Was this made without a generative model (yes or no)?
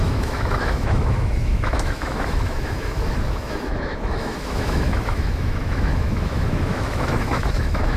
no